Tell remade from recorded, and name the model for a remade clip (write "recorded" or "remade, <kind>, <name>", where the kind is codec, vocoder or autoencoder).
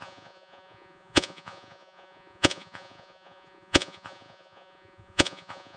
remade, vocoder, Vocos